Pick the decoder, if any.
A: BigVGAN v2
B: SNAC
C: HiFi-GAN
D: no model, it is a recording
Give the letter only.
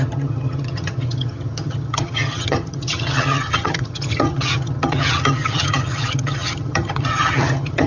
C